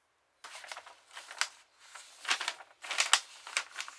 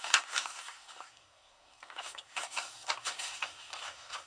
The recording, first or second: first